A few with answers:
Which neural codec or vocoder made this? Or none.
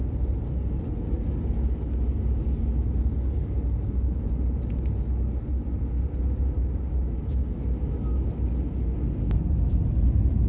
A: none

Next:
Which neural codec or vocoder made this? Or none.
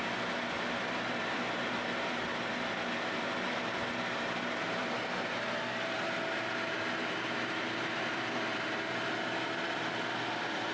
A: vocoder, BigVGAN v2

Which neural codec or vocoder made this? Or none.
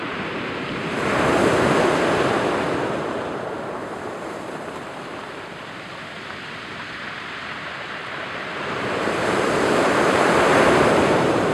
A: vocoder, BigVGAN v2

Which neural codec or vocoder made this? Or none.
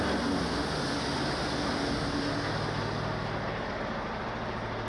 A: none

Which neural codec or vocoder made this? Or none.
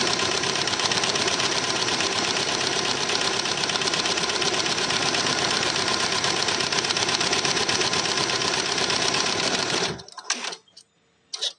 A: vocoder, BigVGAN v2